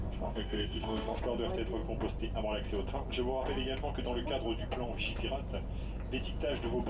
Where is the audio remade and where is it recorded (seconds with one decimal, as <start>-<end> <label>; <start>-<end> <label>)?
0.0-1.2 remade; 1.2-6.9 recorded